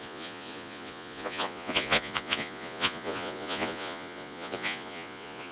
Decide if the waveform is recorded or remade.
remade